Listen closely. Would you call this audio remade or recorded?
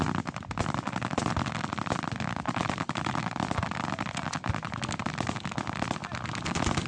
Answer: recorded